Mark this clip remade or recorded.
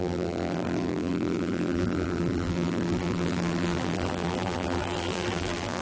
remade